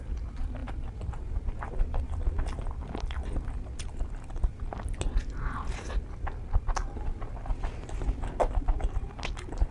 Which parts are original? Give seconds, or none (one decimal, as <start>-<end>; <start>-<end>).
0.0-9.7